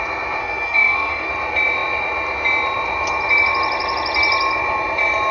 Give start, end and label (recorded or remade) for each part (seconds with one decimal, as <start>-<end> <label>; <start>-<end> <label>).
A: 0.0-0.4 recorded; 0.4-1.3 remade; 1.3-5.3 recorded